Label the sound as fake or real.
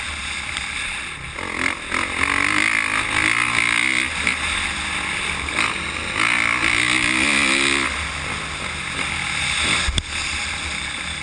real